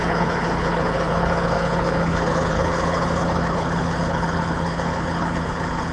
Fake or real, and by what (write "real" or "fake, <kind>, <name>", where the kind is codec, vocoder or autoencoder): fake, codec, HILCodec